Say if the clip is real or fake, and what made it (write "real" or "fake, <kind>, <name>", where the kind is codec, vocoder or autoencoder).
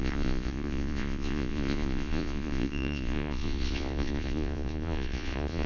fake, vocoder, Vocos